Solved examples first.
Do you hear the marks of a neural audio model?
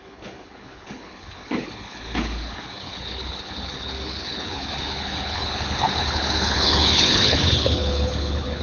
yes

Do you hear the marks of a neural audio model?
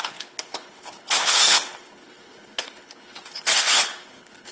yes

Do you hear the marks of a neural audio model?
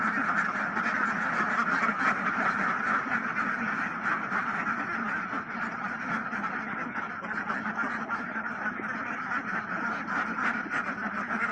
no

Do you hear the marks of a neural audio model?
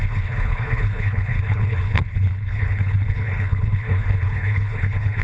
yes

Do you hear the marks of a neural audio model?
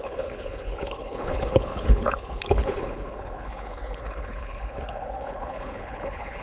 yes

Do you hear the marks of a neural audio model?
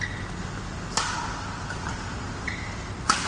no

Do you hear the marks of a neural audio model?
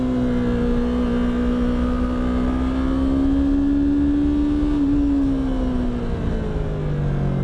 no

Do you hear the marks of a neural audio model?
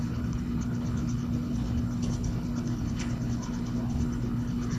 yes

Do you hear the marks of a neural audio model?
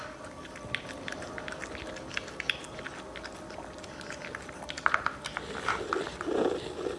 no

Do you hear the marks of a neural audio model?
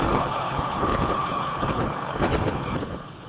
yes